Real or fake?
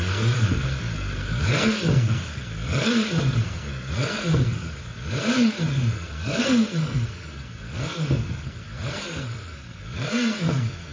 fake